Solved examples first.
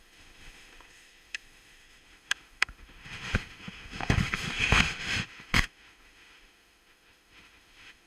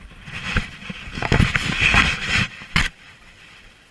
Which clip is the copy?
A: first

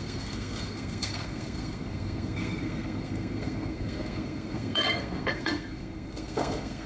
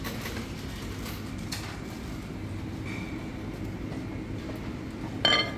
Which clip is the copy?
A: first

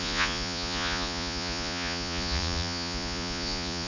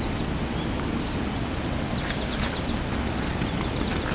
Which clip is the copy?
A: first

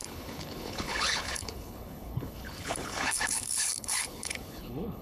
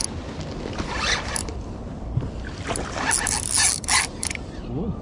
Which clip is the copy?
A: first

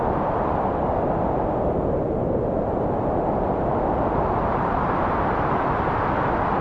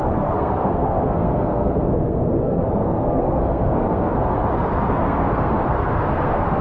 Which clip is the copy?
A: second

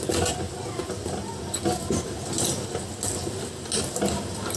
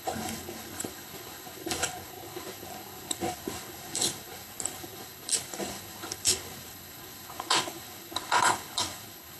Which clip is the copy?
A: second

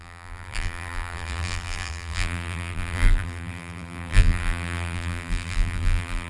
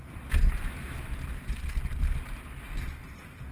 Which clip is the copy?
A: first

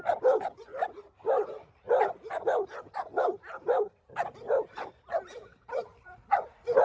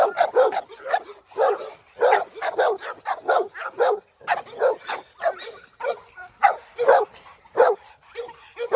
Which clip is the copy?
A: first